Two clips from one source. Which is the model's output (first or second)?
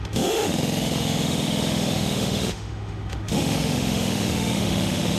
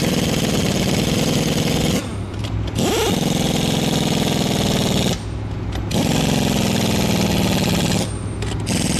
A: first